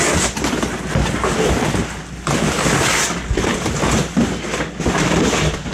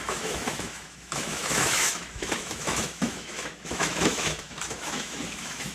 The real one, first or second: first